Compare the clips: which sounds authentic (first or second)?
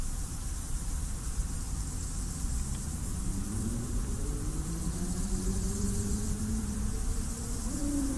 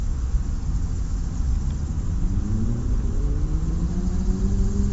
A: second